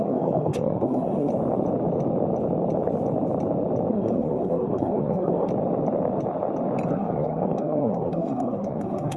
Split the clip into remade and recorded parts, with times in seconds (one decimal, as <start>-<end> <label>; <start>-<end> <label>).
0.0-1.3 remade; 1.3-3.9 recorded; 3.9-5.5 remade; 5.5-6.9 recorded; 6.9-9.2 remade